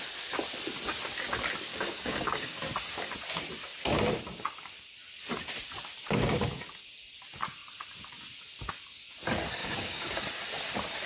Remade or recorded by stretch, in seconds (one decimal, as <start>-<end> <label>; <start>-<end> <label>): 0.0-1.7 recorded; 1.7-2.6 remade; 2.6-9.6 recorded; 9.6-10.2 remade; 10.2-11.1 recorded